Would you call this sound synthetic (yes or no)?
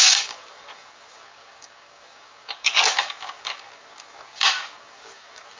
yes